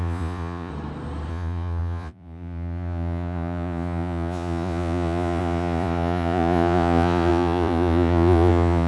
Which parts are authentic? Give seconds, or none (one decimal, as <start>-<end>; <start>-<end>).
0.7-1.3